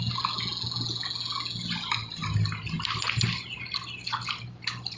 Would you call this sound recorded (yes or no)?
yes